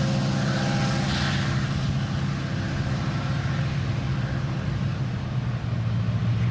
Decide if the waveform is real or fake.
real